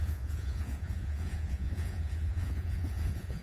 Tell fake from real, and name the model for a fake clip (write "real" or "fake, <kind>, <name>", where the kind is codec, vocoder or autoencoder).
fake, vocoder, Vocos